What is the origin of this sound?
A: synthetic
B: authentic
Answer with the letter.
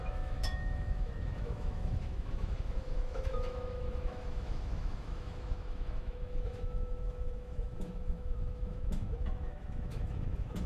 A